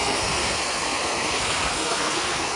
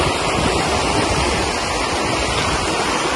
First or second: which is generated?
first